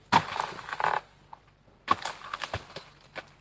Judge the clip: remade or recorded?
recorded